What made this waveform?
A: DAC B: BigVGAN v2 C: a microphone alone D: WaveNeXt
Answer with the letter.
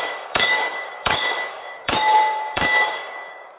A